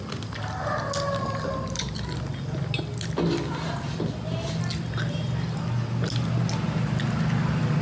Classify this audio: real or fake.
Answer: real